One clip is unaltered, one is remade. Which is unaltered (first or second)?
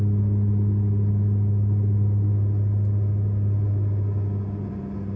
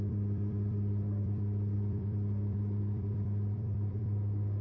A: first